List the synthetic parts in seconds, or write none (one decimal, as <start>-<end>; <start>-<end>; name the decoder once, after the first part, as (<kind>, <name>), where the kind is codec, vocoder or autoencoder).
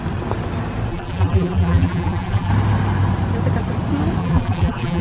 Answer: 0.9-2.5 (vocoder, BigVGAN v2); 4.2-5.0